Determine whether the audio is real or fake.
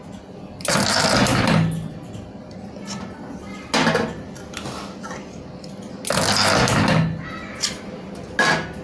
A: real